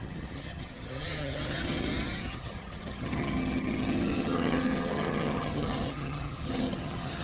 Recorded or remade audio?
remade